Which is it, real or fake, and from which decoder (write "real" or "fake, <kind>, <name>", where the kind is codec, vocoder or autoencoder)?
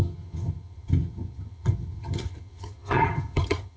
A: fake, vocoder, HiFi-GAN